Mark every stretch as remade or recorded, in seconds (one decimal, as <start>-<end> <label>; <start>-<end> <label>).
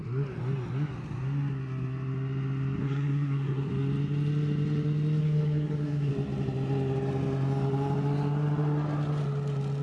0.0-2.8 recorded; 2.8-3.7 remade; 3.7-5.2 recorded; 5.2-6.1 remade; 6.1-9.8 recorded